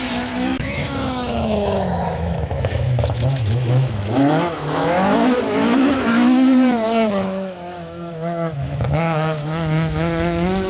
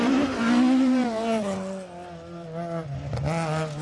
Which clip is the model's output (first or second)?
first